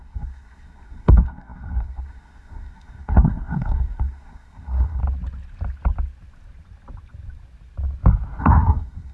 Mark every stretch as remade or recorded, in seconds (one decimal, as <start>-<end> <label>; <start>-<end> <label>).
0.0-5.0 remade; 5.0-8.4 recorded; 8.4-9.1 remade